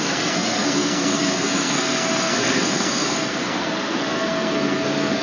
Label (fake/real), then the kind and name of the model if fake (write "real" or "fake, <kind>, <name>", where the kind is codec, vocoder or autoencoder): fake, codec, SNAC